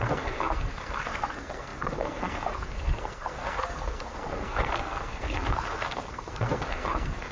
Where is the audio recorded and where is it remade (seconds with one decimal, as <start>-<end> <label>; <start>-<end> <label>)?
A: 0.0-7.3 remade